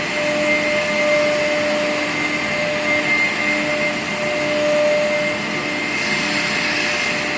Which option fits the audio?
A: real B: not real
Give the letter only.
A